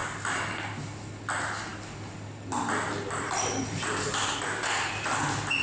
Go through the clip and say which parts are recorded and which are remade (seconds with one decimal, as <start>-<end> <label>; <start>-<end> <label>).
0.0-0.8 remade; 0.8-1.7 recorded; 1.7-4.9 remade; 4.9-5.6 recorded